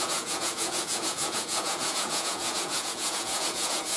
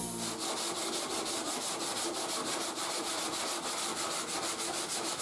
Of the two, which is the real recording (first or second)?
second